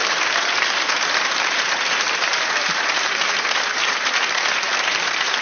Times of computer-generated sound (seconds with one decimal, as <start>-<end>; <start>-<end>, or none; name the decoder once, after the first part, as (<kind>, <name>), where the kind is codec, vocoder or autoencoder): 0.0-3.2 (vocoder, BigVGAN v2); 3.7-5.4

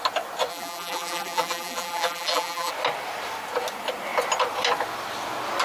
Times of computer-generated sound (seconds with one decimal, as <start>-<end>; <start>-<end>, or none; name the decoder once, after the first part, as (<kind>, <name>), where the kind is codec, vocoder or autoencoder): 0.5-2.7 (vocoder, BigVGAN v2)

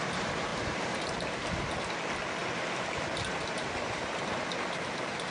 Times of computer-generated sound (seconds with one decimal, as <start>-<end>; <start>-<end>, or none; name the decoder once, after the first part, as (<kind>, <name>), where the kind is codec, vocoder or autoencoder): none

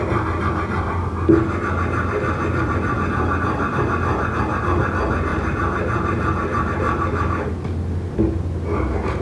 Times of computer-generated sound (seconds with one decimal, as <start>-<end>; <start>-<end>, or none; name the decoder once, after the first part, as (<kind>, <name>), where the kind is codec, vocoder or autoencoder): 5.3-7.5 (vocoder, BigVGAN v2)

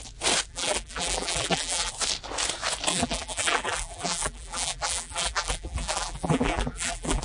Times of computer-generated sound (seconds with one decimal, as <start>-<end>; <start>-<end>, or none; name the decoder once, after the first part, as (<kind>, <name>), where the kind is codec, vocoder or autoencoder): 0.5-1.9 (vocoder, BigVGAN v2); 2.9-7.2